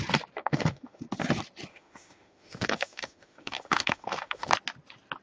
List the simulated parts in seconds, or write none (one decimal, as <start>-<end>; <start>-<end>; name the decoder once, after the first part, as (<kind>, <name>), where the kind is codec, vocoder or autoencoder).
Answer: 0.4-1.0 (autoencoder, DAC-VAE); 1.7-4.5